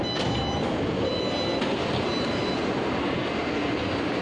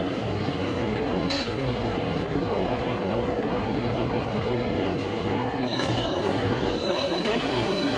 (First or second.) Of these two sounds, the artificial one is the second